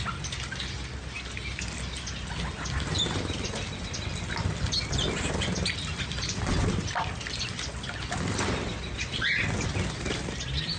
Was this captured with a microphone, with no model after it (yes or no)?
yes